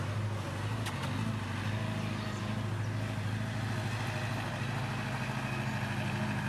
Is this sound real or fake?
real